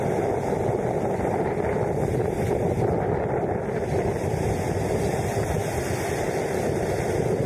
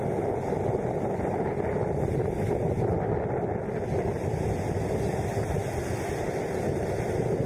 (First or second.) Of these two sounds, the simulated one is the first